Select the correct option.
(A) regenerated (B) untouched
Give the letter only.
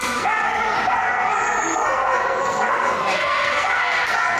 A